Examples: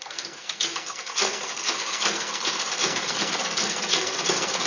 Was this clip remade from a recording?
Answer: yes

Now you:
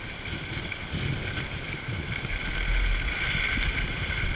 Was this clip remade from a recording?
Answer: no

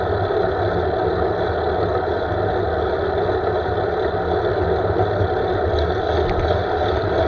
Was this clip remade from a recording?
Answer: no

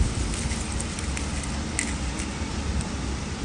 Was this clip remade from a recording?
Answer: no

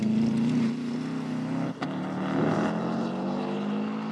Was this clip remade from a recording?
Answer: no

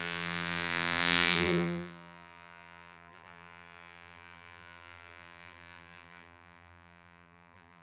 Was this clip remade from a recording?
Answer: yes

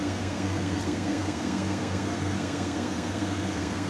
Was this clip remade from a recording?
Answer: yes